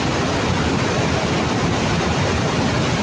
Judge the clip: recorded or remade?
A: recorded